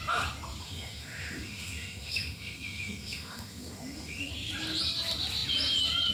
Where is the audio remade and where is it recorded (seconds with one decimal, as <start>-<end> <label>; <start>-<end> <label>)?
0.0-0.6 recorded; 0.6-4.3 remade; 4.3-6.1 recorded